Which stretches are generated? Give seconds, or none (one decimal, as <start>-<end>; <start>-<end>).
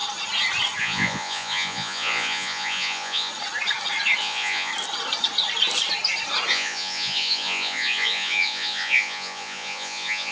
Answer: 0.8-3.3; 4.2-4.7; 6.5-10.3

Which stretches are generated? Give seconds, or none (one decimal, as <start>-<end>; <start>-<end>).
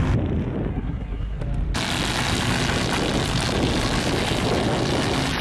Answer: 0.7-1.4